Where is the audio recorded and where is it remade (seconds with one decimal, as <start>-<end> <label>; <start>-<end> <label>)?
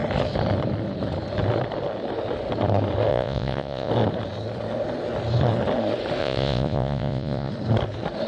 0.0-3.1 recorded; 3.1-3.9 remade; 3.9-6.2 recorded; 6.2-7.5 remade; 7.5-8.3 recorded